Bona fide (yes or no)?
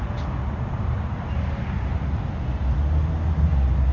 yes